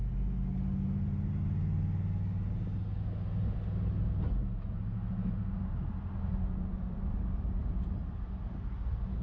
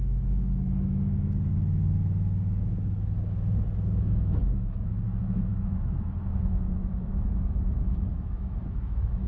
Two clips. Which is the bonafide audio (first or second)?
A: first